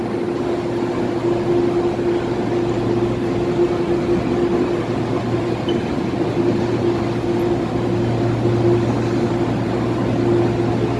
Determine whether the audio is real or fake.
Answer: real